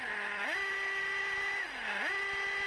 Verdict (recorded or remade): recorded